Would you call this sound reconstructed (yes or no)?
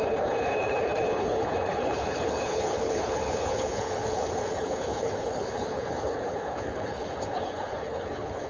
yes